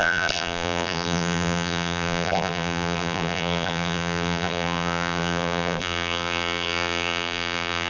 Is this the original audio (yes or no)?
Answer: no